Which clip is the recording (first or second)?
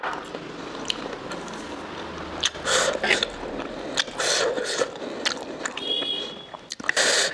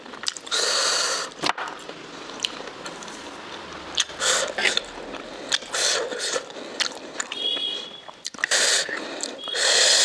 first